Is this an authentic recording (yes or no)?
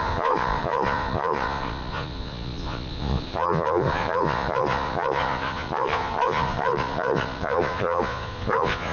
no